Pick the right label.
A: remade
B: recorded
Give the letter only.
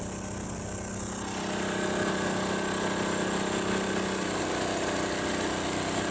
B